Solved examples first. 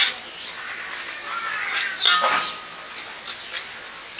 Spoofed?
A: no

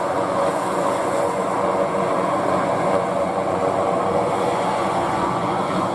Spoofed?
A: yes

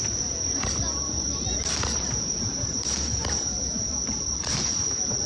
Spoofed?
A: yes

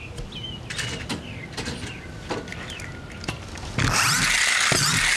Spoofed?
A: no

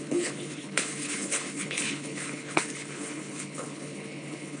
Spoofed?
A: yes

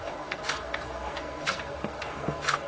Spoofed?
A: yes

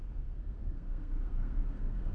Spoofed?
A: yes